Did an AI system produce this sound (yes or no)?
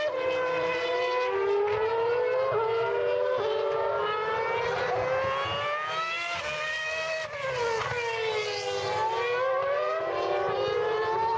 no